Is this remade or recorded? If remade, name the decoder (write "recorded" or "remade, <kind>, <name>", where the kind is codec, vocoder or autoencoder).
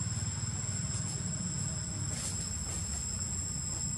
recorded